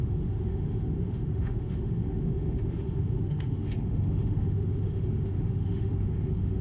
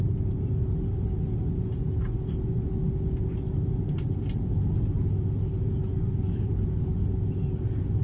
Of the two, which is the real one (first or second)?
second